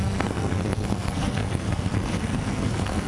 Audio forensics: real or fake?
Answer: fake